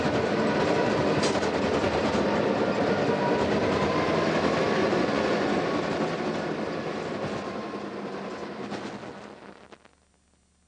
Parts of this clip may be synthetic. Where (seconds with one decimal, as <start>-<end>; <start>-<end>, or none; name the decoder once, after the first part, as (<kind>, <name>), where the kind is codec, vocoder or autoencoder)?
4.8-5.6 (vocoder, Vocos)